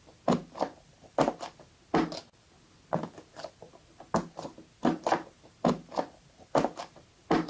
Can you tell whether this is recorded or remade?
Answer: recorded